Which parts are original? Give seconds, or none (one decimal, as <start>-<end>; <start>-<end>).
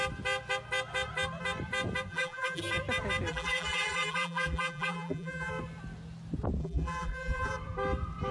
0.0-2.1; 2.6-3.3; 5.5-6.6; 7.5-8.3